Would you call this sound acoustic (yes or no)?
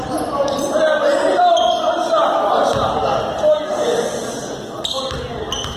yes